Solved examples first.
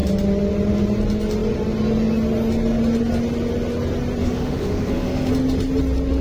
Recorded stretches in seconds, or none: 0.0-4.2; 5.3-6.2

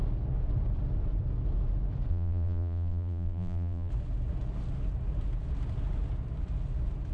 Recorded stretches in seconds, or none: 0.0-2.1; 3.9-7.1